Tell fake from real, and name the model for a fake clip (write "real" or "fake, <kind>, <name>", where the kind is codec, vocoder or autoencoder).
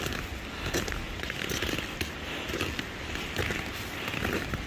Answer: real